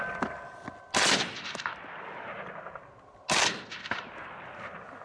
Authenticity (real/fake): real